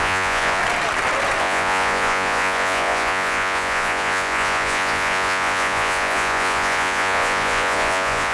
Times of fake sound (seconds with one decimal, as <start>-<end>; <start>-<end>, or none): 0.0-0.6; 1.4-8.3